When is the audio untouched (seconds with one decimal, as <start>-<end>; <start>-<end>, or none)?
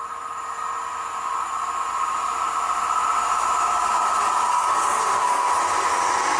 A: 0.0-4.5; 5.5-6.4